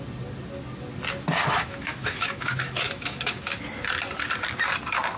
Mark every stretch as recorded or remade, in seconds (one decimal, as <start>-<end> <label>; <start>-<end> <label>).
0.0-1.4 recorded; 1.4-3.4 remade; 3.4-5.2 recorded